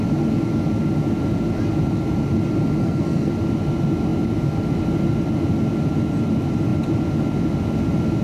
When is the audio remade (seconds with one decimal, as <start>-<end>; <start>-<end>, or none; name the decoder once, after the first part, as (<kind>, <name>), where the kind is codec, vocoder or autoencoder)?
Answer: 2.8-3.3 (codec, SNAC)